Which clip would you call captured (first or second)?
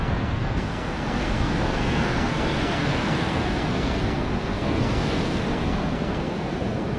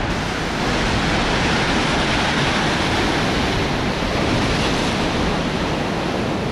second